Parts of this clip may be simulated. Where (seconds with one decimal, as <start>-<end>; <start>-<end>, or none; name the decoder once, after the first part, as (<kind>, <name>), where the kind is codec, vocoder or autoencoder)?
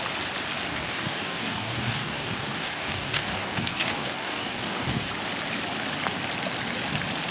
0.7-5.1 (codec, DAC)